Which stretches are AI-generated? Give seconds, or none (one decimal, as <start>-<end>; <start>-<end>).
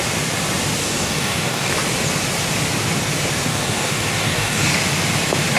0.8-1.7; 3.5-4.7